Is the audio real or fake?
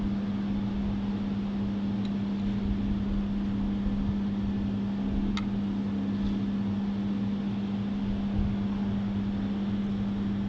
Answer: real